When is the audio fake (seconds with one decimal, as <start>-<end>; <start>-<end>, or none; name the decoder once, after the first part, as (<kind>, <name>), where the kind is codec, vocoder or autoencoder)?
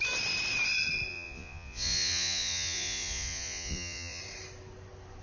1.1-4.2 (vocoder, Vocos)